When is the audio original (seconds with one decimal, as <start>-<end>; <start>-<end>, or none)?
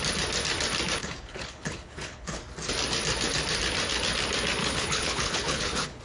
0.0-1.0; 2.4-4.6